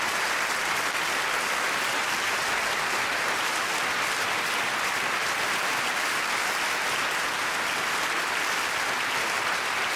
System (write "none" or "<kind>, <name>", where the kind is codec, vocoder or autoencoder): none